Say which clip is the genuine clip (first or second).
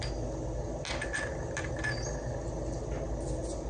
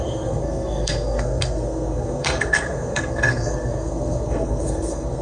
first